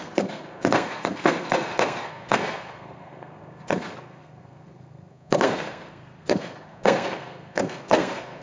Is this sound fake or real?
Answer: fake